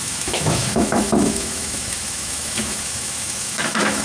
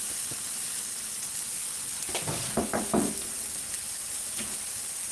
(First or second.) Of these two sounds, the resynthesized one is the first